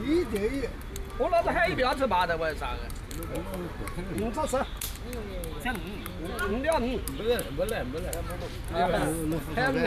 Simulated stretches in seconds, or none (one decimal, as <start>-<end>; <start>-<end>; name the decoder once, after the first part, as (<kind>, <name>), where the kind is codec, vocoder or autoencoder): none